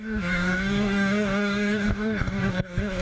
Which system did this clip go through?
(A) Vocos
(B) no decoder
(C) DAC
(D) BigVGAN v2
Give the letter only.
C